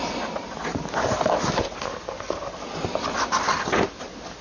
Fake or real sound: real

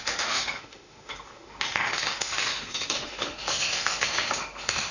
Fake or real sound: fake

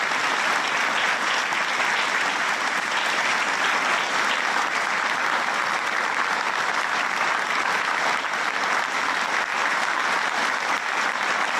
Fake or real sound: real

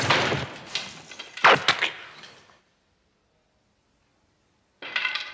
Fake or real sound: real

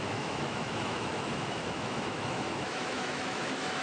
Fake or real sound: fake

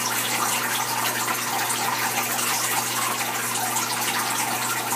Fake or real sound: real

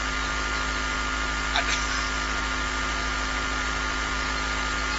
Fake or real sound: real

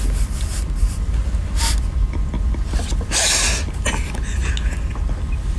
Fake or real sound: real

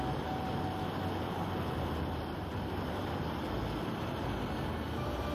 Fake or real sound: real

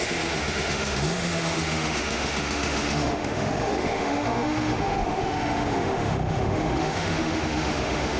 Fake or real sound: fake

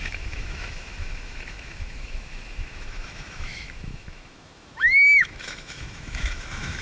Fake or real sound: fake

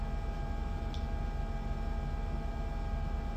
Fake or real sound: real